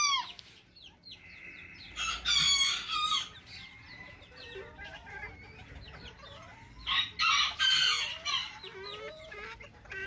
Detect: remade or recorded recorded